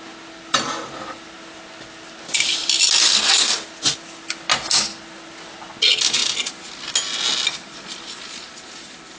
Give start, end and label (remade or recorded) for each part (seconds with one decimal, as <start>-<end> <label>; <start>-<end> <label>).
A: 0.0-9.2 recorded